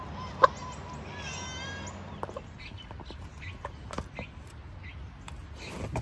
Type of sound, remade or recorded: recorded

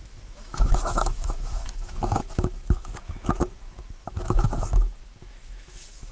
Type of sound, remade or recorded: remade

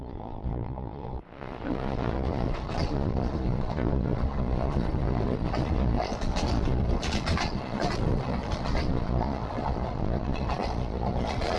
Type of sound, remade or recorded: remade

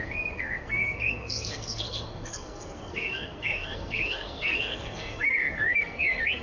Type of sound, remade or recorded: remade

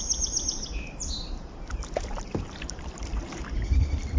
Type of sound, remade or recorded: recorded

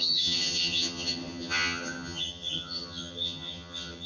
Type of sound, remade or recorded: remade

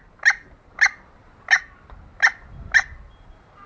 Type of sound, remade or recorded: recorded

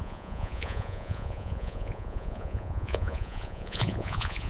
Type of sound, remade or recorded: remade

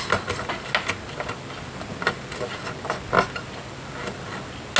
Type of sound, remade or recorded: recorded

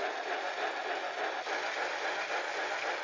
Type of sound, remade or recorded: recorded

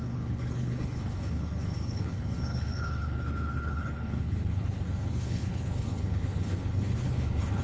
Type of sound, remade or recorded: remade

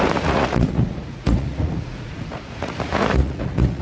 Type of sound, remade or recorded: remade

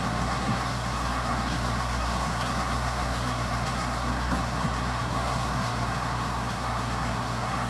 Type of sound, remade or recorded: remade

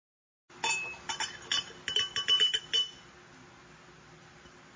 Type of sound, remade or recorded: recorded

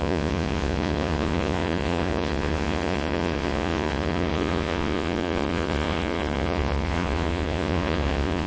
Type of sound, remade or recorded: remade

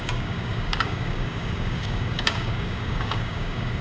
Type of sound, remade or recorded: remade